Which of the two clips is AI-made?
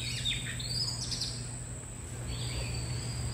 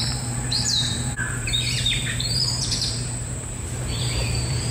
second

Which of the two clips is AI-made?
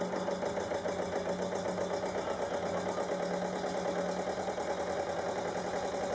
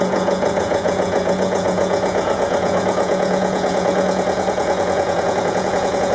second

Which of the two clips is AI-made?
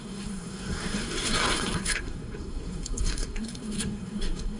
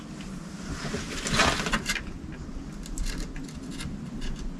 first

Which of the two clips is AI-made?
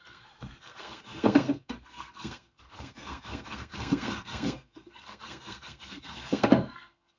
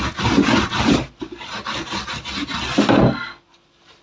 first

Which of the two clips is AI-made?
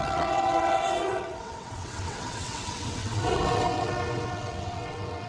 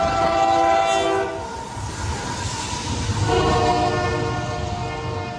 first